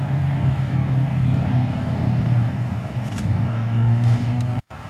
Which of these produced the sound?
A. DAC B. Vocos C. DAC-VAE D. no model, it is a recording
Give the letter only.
A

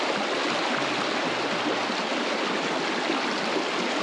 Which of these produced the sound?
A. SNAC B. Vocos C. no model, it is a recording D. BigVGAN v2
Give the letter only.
C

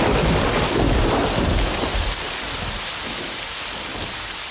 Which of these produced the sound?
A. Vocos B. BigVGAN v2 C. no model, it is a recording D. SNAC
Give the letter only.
C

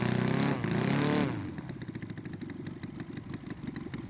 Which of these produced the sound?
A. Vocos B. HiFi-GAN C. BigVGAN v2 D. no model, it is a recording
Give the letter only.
D